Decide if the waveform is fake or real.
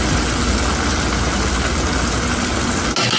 real